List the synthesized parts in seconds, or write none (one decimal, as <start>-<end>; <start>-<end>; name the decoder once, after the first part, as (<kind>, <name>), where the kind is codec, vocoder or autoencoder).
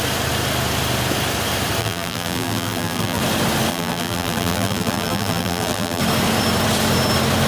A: 1.8-3.2 (vocoder, BigVGAN v2); 3.7-6.0